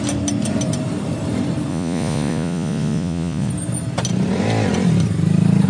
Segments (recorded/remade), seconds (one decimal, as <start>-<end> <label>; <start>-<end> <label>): 0.0-1.7 recorded; 1.7-3.5 remade; 3.5-5.7 recorded